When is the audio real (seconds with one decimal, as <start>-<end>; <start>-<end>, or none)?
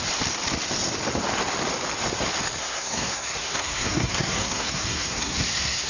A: 0.0-2.6